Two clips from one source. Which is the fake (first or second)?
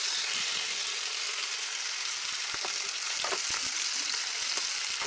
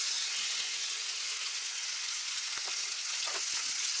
second